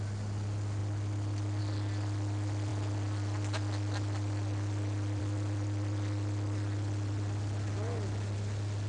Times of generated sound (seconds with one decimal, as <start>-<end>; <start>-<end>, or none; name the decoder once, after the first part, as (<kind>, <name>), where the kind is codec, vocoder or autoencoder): none

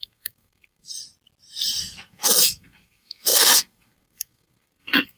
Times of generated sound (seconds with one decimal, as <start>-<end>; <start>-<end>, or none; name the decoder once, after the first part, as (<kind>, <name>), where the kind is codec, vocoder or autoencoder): 0.0-0.9 (codec, SNAC); 1.8-5.2